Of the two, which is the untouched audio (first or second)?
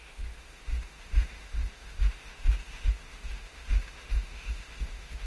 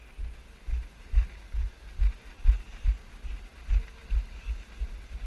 second